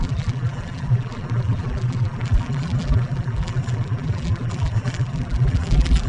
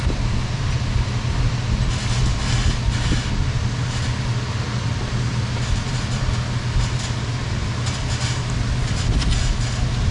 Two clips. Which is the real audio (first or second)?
second